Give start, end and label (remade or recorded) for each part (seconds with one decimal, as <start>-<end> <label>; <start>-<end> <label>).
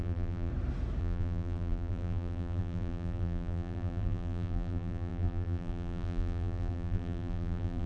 0.0-0.5 remade; 0.5-1.0 recorded; 1.0-7.9 remade